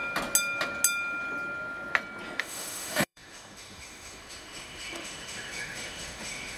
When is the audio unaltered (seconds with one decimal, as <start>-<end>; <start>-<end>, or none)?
0.0-2.4